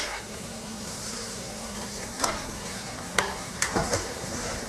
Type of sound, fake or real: fake